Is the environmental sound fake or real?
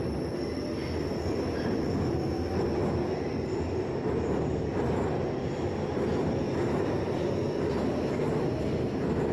real